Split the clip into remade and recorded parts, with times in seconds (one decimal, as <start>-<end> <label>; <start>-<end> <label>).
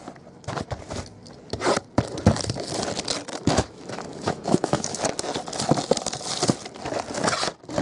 0.0-3.3 recorded; 3.3-5.0 remade; 5.0-7.8 recorded